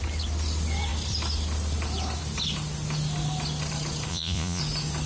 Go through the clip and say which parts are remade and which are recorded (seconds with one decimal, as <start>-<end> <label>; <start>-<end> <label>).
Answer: 0.0-4.1 recorded; 4.1-4.6 remade; 4.6-5.1 recorded